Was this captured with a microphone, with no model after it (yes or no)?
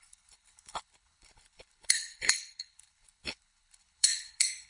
no